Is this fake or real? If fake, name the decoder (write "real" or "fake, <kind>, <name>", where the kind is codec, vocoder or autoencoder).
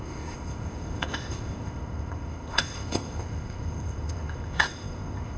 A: fake, codec, ZipCodec